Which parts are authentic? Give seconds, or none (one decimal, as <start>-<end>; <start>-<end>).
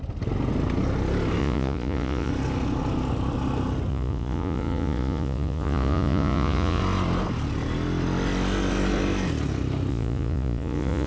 0.0-1.4; 2.3-3.9; 6.8-9.9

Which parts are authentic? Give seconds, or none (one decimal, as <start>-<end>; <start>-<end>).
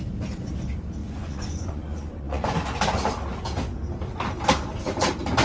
0.0-1.0; 2.6-5.4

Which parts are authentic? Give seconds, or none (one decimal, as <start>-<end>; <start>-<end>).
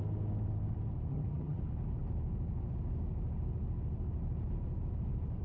0.0-1.1; 1.6-5.4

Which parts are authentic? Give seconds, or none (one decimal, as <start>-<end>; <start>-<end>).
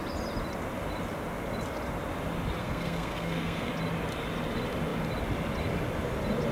0.0-2.6; 3.7-6.5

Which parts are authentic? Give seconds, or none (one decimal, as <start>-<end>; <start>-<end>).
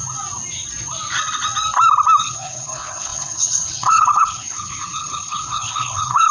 0.0-2.2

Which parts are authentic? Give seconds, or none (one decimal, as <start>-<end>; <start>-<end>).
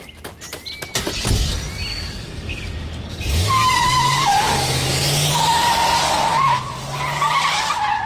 0.0-1.9; 5.3-8.1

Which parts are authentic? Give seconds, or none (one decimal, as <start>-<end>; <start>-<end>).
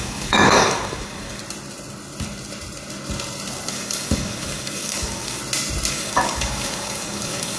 1.4-3.7; 5.4-5.9